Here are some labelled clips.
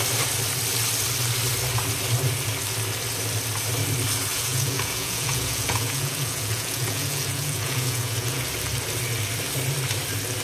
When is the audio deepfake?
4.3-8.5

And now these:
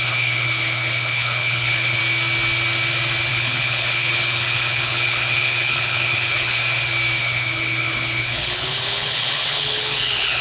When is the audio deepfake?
0.0-2.0; 3.3-6.6; 7.2-10.4